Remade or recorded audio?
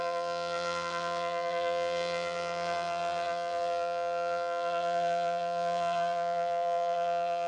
remade